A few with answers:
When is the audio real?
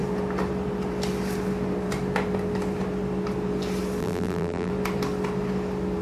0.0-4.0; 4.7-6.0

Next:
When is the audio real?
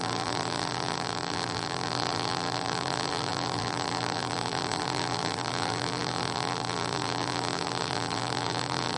none